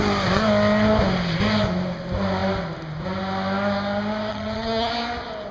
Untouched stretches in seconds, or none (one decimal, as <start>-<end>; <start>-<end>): 0.0-4.3; 4.9-5.5